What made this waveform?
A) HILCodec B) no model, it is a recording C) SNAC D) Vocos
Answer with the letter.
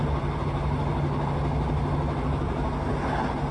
B